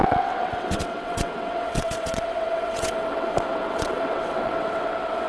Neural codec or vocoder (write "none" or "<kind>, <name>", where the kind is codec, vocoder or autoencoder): vocoder, WaveNeXt